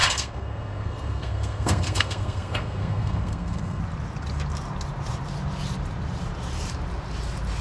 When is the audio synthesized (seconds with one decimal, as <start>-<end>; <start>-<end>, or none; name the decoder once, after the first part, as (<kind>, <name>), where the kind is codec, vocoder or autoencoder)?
0.0-3.8 (codec, SNAC)